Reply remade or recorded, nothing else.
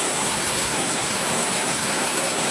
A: remade